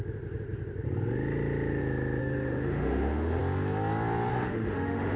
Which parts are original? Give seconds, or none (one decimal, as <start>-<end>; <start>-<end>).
0.0-2.2; 3.4-4.3